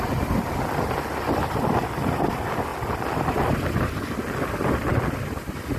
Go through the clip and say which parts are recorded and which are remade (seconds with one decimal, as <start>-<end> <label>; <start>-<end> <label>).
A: 0.0-5.8 recorded